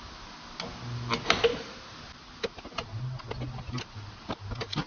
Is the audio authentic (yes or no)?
yes